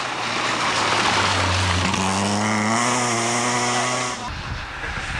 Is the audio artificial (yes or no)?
no